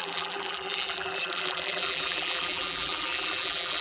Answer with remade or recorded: remade